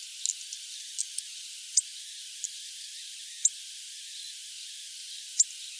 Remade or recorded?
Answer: recorded